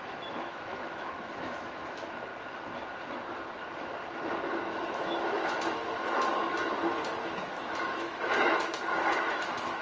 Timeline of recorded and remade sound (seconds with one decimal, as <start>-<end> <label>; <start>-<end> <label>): 0.0-2.3 remade; 2.3-4.9 recorded; 4.9-6.4 remade; 6.4-7.1 recorded; 7.1-9.8 remade